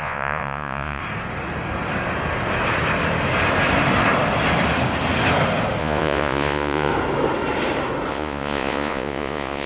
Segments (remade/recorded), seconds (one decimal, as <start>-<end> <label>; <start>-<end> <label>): 0.0-1.0 remade; 1.0-5.8 recorded; 5.8-6.9 remade; 6.9-8.1 recorded; 8.1-9.7 remade